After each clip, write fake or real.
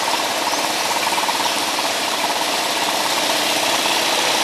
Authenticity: fake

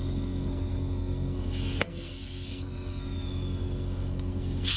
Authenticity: fake